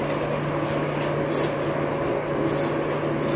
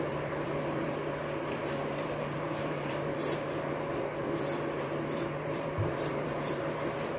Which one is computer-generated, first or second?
second